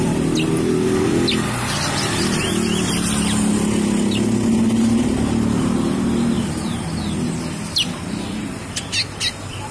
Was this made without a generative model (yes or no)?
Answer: yes